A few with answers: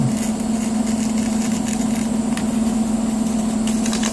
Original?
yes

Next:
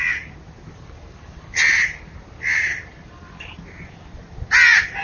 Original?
yes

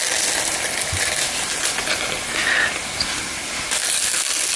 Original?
yes